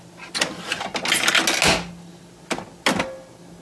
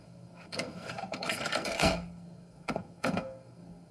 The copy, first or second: second